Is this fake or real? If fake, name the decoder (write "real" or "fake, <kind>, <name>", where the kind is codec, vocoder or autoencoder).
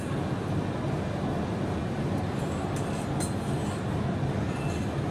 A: real